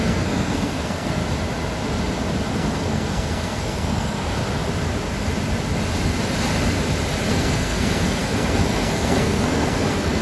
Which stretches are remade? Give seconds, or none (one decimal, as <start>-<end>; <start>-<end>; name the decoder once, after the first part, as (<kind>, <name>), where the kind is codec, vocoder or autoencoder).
0.0-1.2 (codec, SNAC); 2.5-4.4; 7.3-10.2